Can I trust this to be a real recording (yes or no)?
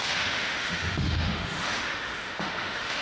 no